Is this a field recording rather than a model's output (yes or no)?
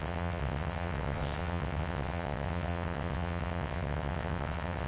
no